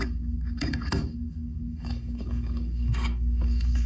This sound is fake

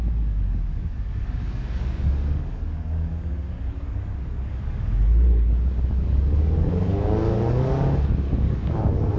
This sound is fake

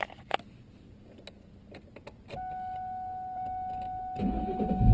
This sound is real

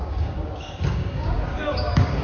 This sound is fake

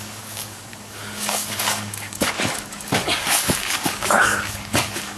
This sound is fake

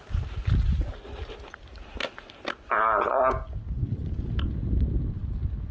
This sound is real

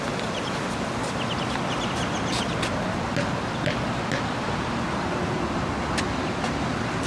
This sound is real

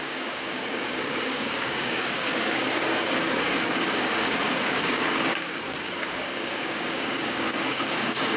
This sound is fake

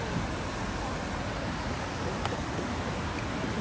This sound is real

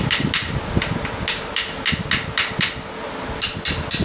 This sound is real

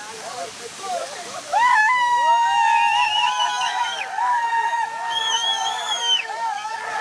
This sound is fake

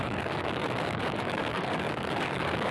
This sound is fake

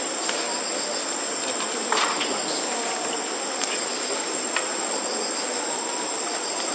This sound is real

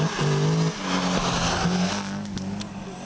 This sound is real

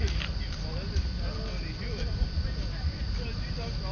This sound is real